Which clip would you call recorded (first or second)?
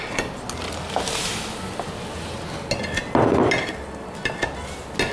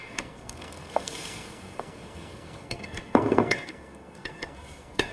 first